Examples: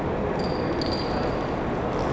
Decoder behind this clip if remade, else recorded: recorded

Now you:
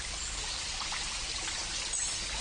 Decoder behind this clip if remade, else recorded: recorded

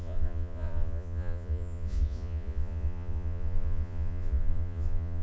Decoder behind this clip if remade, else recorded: remade, vocoder, Vocos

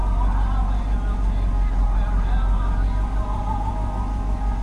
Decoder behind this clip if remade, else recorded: recorded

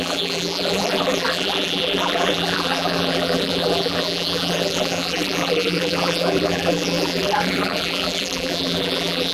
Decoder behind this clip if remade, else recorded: remade, vocoder, BigVGAN v2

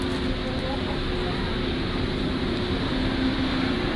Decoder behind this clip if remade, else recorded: recorded